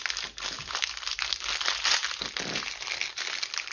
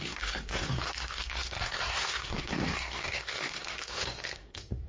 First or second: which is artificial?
second